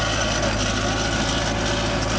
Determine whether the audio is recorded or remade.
recorded